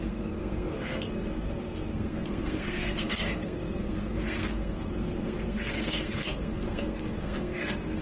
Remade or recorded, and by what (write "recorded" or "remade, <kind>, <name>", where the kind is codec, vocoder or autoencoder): remade, codec, SNAC